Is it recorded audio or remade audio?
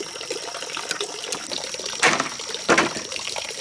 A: remade